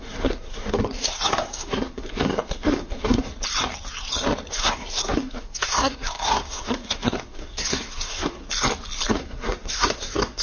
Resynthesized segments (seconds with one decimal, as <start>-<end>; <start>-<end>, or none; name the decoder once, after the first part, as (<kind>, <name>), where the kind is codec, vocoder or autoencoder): 0.0-3.3 (codec, SNAC); 4.5-8.4; 9.1-10.4